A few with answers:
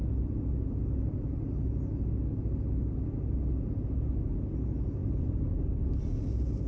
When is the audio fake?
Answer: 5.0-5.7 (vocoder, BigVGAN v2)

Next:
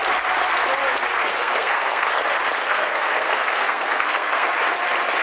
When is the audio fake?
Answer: 1.3-2.2 (codec, SNAC); 2.6-4.5

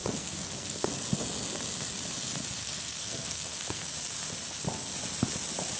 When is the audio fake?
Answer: 0.0-0.9 (codec, SNAC); 2.6-3.9